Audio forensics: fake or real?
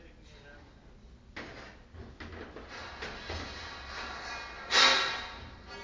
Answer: real